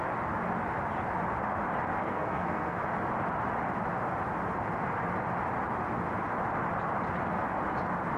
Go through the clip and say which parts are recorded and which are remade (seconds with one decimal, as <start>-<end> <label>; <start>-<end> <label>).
0.0-2.0 recorded; 2.0-2.8 remade; 2.8-8.2 recorded